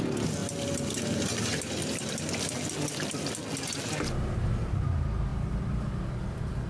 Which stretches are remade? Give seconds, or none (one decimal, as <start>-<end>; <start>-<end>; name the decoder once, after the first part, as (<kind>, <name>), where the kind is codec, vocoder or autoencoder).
none